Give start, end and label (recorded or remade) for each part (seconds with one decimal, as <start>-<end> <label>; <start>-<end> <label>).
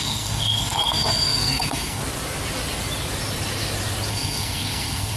0.0-2.0 remade; 2.0-4.1 recorded; 4.1-5.2 remade